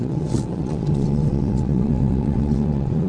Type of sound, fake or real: fake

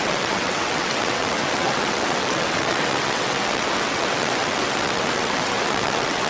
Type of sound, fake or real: fake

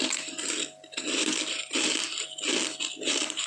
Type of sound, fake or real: real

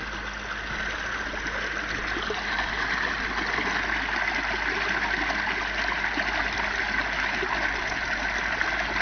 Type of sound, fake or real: real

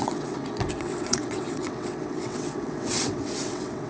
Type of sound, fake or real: fake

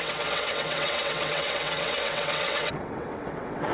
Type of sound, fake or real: fake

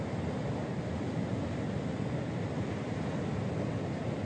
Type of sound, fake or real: real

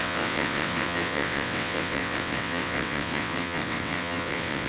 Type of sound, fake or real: fake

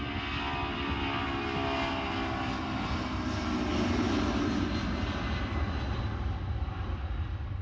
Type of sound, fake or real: real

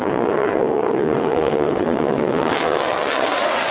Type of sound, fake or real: fake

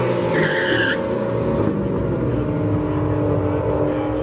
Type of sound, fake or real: real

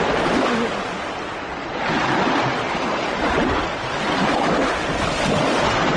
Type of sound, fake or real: real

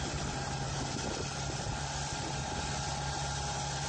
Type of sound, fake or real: real